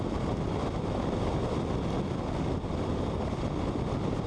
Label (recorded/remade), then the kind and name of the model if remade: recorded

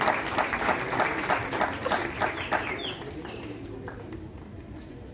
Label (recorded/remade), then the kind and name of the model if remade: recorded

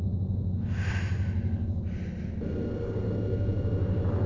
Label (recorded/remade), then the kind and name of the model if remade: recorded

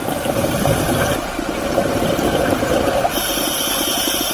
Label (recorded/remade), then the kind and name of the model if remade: remade, vocoder, BigVGAN v2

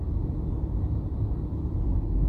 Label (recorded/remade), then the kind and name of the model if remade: recorded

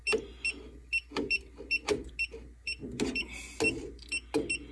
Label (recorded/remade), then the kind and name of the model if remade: recorded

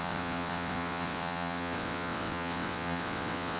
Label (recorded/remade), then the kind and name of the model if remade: remade, vocoder, WaveNeXt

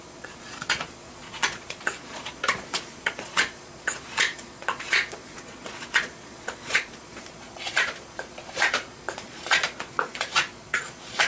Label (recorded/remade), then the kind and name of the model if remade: remade, vocoder, Vocos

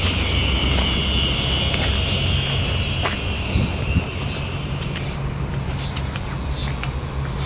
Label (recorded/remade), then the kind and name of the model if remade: recorded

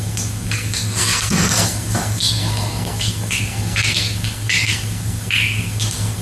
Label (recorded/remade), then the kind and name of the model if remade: remade, codec, SNAC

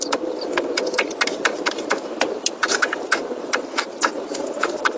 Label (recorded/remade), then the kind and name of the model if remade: remade, vocoder, BigVGAN v2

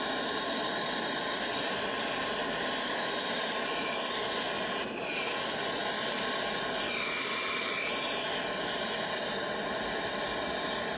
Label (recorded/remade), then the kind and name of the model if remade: recorded